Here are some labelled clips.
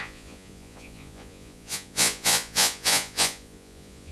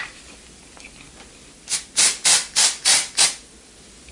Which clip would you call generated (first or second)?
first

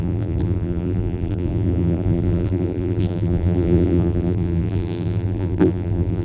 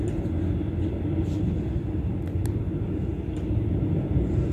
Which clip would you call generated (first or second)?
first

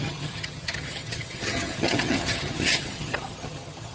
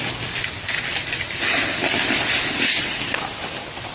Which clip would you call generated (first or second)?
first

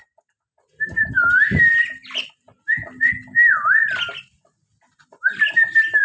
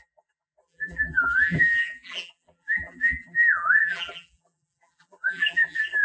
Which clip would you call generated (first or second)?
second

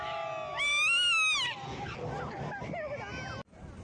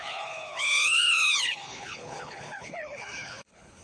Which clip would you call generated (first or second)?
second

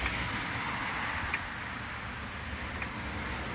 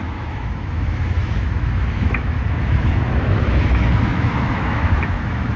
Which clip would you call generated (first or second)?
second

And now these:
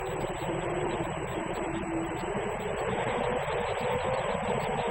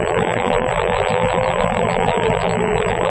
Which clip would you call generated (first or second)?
second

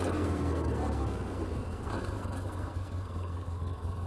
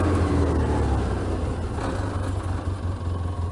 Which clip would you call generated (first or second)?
first